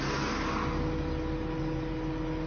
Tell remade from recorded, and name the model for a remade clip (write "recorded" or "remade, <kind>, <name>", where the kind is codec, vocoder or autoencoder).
recorded